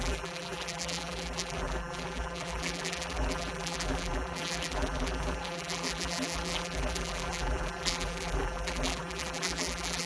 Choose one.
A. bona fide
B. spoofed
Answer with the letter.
B